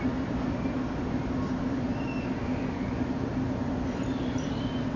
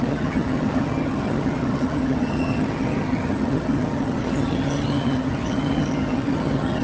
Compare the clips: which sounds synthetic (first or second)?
second